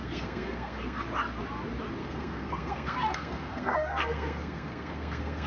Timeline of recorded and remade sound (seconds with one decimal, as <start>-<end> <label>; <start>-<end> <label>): 0.0-1.0 remade; 1.0-2.0 recorded; 2.0-5.5 remade